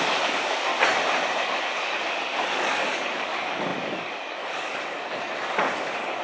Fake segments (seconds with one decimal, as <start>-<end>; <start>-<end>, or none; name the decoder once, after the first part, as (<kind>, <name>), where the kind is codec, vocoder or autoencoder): 0.0-0.7 (codec, DAC); 1.4-6.2